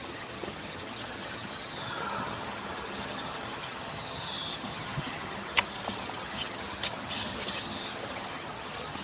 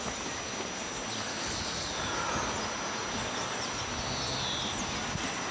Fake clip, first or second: first